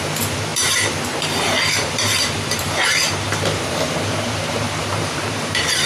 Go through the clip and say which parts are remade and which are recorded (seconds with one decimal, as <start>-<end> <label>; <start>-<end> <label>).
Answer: 0.0-5.9 remade